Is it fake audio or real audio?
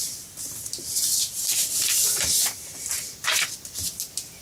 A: real